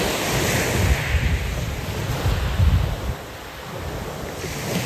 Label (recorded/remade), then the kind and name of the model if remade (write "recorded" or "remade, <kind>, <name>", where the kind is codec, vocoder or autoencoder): recorded